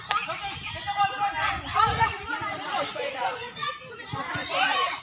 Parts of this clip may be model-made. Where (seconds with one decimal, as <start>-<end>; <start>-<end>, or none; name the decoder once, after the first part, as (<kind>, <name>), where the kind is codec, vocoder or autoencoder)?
1.7-3.7 (vocoder, Vocos); 4.3-5.0